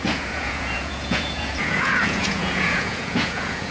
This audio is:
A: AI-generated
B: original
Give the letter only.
A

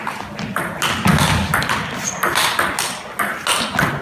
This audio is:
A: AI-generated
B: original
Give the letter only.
B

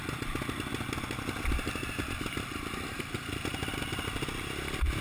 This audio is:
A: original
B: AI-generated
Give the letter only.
A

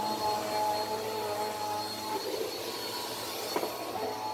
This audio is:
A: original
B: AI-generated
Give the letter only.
A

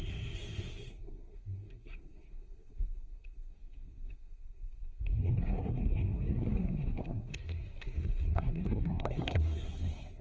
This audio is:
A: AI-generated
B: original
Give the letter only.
A